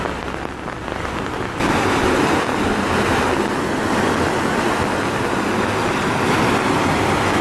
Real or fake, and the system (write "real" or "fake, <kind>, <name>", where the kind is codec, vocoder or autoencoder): real